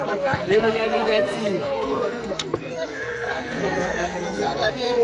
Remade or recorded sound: remade